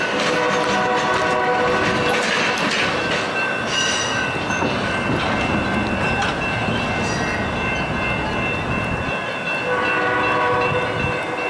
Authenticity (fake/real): real